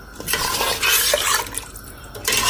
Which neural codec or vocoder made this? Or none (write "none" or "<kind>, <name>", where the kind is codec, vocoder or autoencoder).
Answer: none